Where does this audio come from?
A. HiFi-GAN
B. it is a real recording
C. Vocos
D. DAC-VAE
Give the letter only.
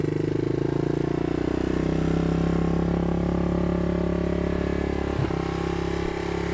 B